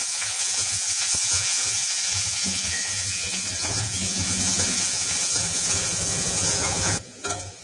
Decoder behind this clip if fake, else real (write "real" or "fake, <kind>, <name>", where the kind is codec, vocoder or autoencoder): fake, vocoder, Vocos